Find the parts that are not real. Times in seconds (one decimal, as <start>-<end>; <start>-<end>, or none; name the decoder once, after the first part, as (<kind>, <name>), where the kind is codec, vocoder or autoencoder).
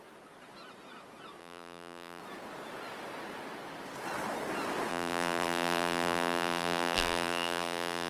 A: 1.4-2.2 (vocoder, BigVGAN v2); 4.9-8.1